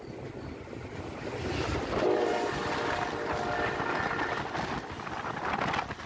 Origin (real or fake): real